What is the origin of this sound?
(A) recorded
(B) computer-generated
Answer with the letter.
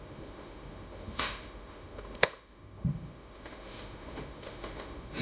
B